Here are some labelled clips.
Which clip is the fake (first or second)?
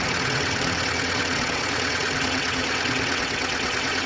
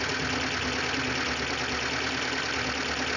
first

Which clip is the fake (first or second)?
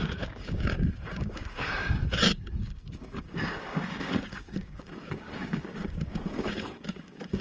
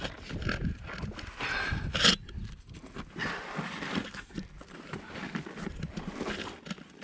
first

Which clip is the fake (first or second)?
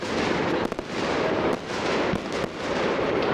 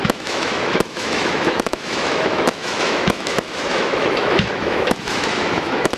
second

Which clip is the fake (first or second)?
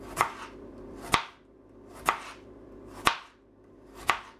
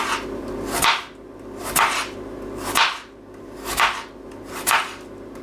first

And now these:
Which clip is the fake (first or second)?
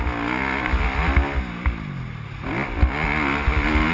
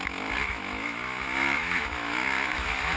second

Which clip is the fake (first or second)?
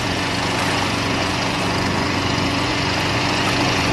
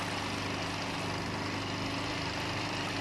first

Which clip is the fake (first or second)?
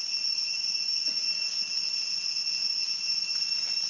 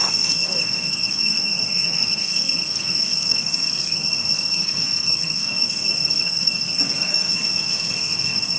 second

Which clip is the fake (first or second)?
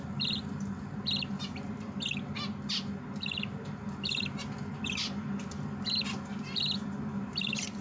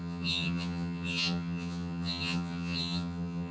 second